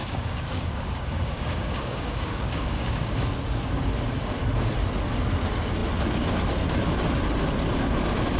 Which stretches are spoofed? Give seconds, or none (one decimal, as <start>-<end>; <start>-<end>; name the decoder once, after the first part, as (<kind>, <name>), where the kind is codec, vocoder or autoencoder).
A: 0.0-3.2 (codec, DAC)